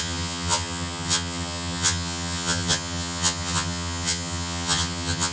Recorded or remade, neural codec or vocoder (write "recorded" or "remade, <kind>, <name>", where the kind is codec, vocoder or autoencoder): remade, vocoder, HiFi-GAN